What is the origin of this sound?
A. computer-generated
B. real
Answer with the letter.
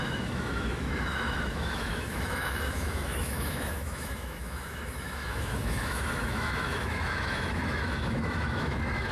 A